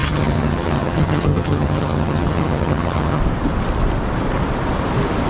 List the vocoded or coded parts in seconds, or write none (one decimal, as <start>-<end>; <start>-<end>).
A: 0.0-3.2